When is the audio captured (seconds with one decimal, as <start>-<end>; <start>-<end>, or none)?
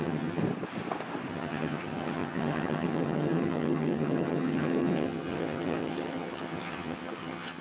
0.4-1.3